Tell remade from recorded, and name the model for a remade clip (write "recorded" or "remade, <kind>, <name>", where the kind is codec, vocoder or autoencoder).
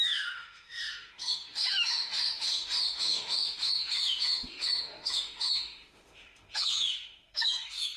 remade, autoencoder, DAC-VAE